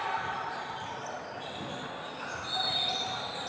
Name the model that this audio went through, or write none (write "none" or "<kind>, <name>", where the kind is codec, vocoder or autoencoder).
none